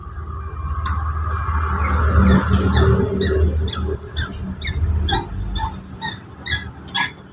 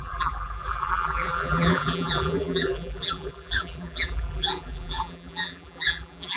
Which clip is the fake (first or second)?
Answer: second